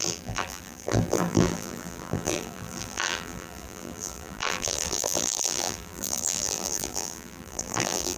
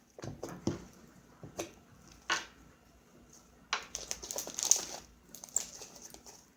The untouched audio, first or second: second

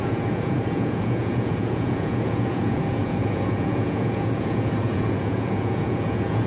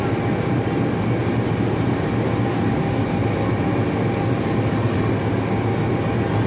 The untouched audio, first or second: second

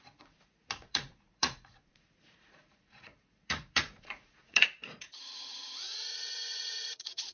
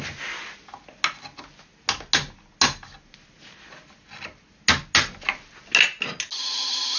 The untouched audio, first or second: second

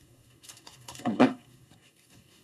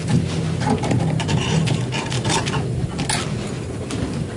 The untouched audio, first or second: second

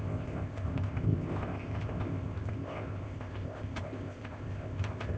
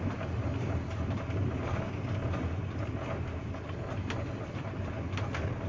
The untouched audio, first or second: second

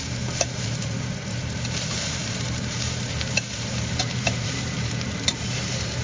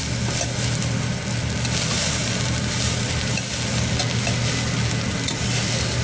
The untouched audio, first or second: second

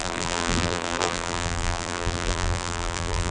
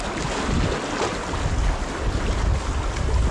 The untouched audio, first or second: second